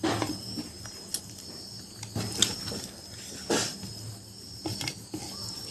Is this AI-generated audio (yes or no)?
no